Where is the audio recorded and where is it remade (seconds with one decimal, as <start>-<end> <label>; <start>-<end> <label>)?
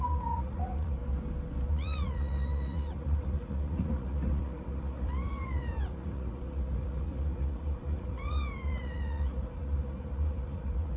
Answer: 0.0-1.0 remade; 1.0-1.7 recorded; 1.7-11.0 remade